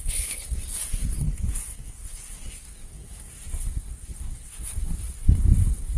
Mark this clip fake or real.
fake